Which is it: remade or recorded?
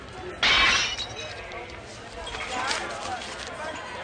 recorded